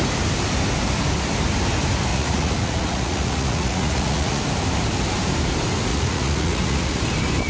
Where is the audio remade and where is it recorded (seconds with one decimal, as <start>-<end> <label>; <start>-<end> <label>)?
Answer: 0.0-2.1 recorded; 2.1-4.4 remade; 4.4-5.9 recorded; 5.9-7.0 remade; 7.0-7.5 recorded